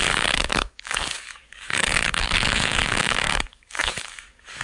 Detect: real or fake fake